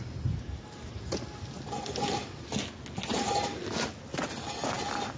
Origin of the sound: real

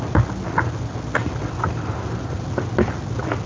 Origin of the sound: real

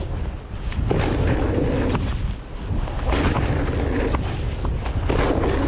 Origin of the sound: real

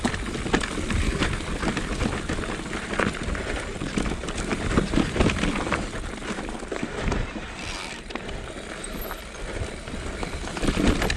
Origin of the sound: fake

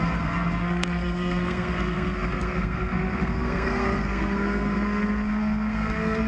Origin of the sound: fake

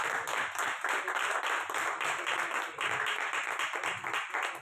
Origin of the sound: real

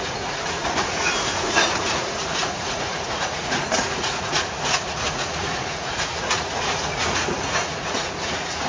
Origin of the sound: fake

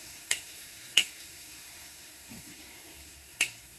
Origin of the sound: fake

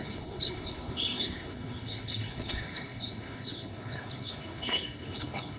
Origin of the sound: fake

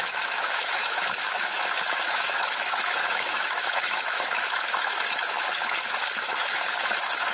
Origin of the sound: fake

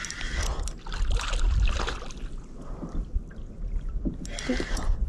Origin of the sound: real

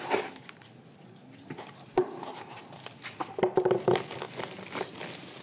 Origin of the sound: real